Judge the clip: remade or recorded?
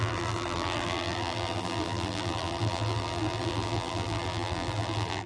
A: remade